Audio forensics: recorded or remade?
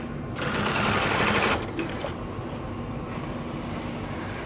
recorded